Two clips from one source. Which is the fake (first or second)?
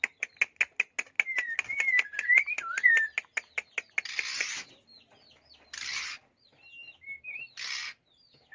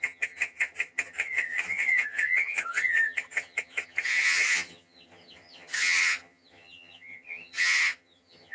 second